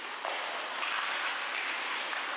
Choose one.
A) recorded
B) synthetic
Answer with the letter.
A